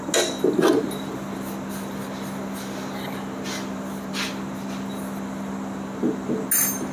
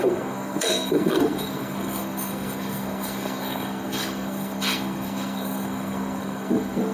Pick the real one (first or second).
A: first